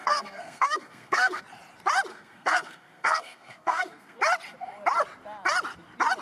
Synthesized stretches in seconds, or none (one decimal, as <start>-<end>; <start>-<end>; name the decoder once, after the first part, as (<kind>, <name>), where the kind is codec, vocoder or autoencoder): 0.0-1.4 (codec, SNAC); 2.1-4.2